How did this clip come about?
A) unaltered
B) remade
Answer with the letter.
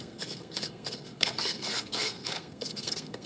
B